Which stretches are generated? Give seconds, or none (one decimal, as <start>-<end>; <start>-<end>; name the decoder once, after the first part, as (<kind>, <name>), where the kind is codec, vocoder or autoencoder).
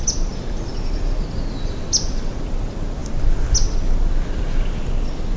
none